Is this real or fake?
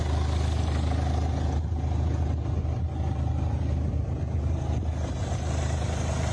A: real